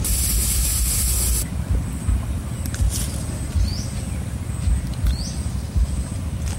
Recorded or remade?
recorded